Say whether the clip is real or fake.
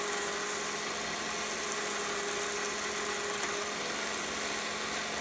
real